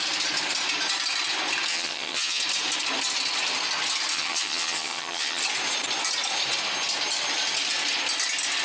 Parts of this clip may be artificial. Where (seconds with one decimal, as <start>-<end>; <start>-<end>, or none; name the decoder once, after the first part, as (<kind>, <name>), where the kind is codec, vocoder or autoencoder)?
1.7-2.4 (vocoder, HiFi-GAN); 4.1-5.4